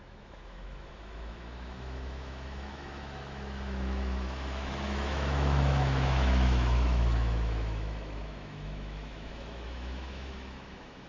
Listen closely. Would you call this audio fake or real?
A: fake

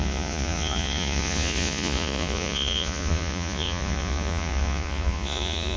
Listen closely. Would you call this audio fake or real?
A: fake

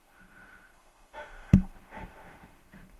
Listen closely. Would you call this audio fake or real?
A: fake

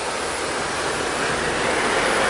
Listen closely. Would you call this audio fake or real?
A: real